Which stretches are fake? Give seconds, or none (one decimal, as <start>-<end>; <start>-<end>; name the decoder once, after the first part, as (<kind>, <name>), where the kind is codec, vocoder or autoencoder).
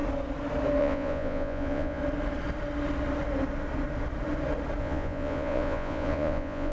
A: 0.8-2.0 (vocoder, Vocos); 4.8-6.7